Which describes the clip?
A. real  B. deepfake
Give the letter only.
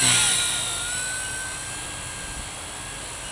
A